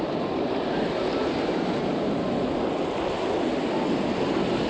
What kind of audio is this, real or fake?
real